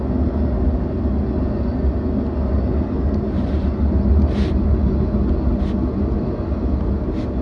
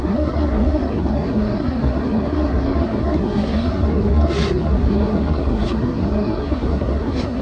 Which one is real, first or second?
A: first